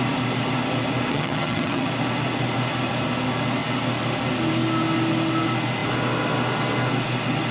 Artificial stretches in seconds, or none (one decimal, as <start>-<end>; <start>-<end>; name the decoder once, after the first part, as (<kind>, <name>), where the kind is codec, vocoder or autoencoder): 1.1-1.9 (vocoder, HiFi-GAN)